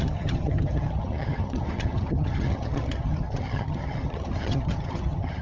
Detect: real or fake fake